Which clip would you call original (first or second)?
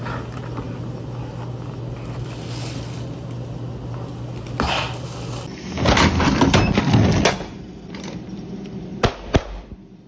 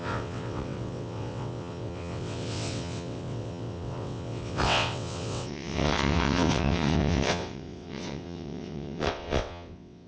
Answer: first